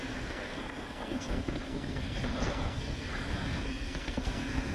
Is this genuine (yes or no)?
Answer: no